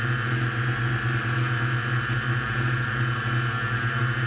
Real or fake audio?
real